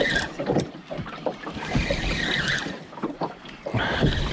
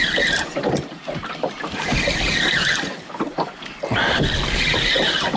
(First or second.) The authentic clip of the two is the second